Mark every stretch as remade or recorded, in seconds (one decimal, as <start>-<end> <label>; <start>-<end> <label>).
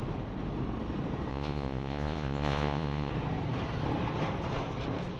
0.0-1.3 recorded; 1.3-3.1 remade; 3.1-5.2 recorded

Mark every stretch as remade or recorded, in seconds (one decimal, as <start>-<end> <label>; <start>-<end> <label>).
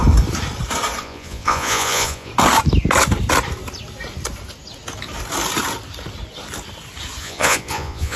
0.0-1.0 recorded; 1.0-2.3 remade; 2.3-7.2 recorded; 7.2-8.2 remade